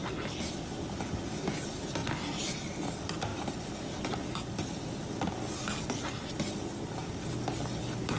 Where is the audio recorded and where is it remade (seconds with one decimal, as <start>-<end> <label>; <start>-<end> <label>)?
0.0-8.2 recorded